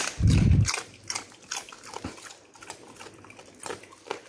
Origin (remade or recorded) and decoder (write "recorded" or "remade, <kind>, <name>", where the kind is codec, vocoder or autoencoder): recorded